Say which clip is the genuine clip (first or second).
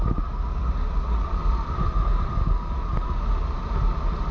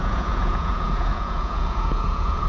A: first